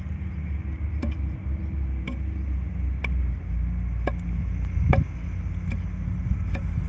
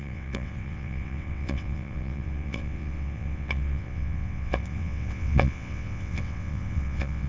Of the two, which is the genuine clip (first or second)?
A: first